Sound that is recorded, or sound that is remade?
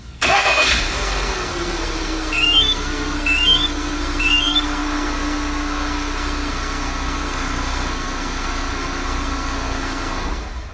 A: remade